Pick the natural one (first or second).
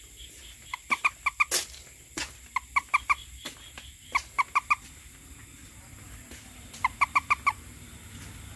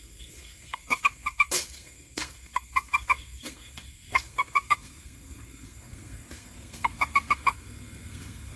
first